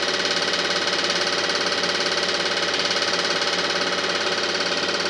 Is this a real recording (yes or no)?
yes